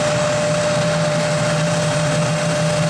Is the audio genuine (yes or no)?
yes